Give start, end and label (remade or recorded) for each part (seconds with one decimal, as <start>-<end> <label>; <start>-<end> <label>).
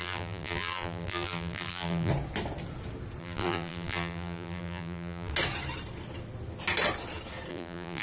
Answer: 0.0-2.1 remade; 2.1-3.2 recorded; 3.2-5.3 remade; 5.3-7.5 recorded; 7.5-8.0 remade